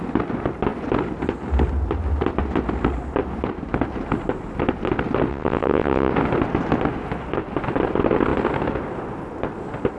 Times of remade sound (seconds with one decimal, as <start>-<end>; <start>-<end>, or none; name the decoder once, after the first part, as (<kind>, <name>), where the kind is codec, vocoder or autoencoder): 5.3-6.1 (vocoder, WaveNeXt)